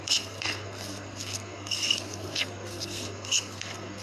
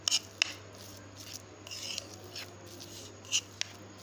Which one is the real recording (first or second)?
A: second